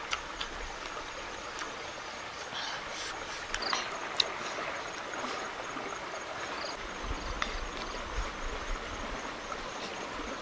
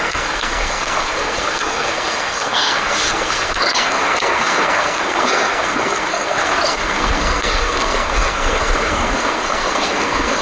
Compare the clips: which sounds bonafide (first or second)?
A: first